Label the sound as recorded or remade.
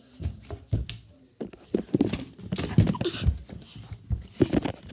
recorded